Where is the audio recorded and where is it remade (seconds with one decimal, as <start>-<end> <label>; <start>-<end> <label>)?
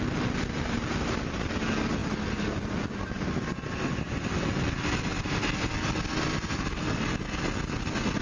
0.0-8.2 recorded